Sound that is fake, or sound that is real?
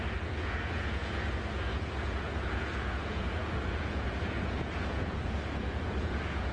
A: fake